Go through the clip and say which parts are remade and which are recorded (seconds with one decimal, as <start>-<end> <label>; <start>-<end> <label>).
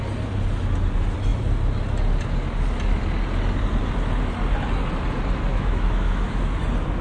0.0-5.5 recorded; 5.5-6.6 remade; 6.6-7.0 recorded